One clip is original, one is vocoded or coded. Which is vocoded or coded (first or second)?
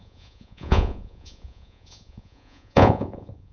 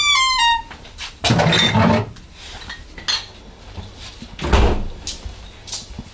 first